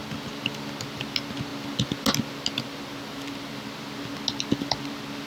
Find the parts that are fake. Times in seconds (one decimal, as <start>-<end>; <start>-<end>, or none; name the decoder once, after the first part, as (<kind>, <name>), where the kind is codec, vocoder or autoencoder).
none